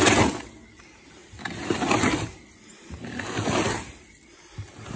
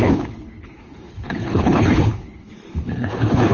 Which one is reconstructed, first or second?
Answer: second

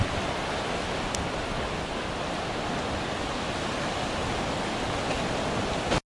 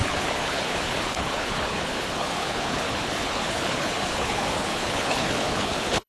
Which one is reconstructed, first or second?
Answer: second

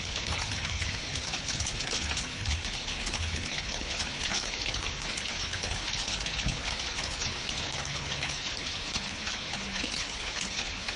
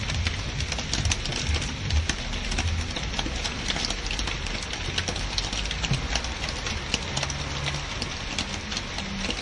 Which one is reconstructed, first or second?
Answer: first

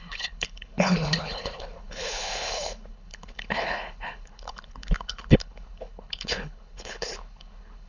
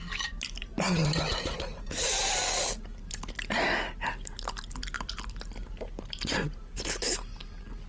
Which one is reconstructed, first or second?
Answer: first